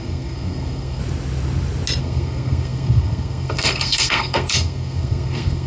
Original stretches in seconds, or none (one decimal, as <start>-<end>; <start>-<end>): 1.0-2.0